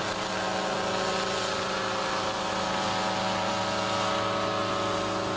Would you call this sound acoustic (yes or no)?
yes